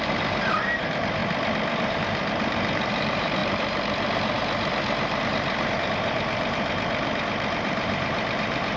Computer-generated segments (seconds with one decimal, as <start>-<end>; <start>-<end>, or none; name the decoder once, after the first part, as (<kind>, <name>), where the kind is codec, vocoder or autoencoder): 0.0-1.2 (vocoder, BigVGAN v2); 1.9-8.8